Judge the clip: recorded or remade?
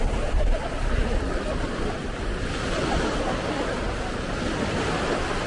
recorded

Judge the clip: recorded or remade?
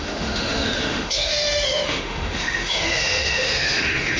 remade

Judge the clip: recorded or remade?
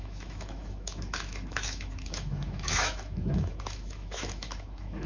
remade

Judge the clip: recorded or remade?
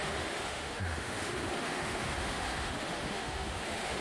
remade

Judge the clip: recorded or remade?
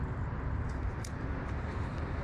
recorded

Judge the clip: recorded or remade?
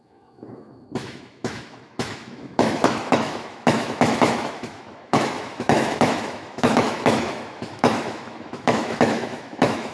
remade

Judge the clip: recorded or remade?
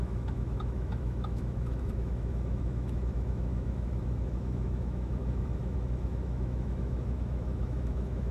remade